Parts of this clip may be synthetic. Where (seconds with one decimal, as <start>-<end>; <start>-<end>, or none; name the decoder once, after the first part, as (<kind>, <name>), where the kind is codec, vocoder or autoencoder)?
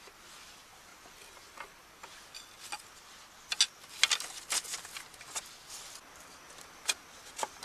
none